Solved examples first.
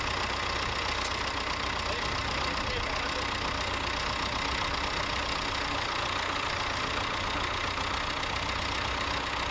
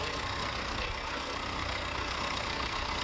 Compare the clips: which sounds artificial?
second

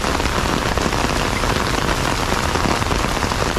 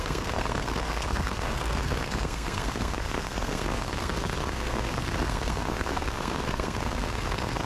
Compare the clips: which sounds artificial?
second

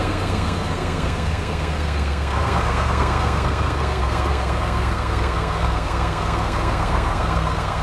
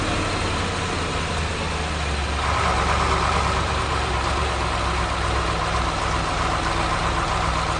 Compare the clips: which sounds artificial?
first